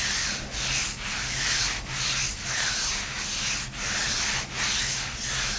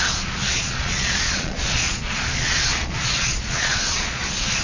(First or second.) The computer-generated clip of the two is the second